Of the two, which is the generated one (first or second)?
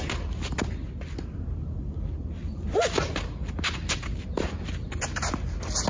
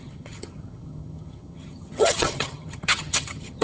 second